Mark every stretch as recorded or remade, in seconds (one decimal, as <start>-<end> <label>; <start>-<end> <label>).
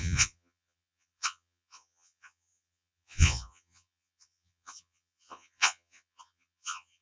0.0-7.0 remade